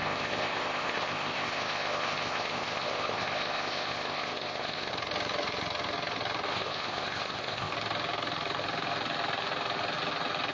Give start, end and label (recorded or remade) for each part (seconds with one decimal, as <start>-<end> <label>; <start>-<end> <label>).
0.0-4.9 remade; 4.9-6.5 recorded; 6.5-7.7 remade; 7.7-10.5 recorded